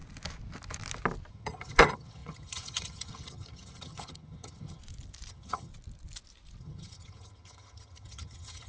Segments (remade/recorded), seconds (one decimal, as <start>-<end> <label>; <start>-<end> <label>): 0.0-1.3 recorded; 1.3-4.8 remade; 4.8-5.3 recorded; 5.3-5.7 remade; 5.7-6.6 recorded; 6.6-8.7 remade